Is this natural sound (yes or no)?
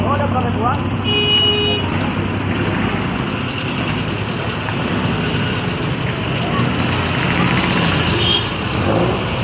yes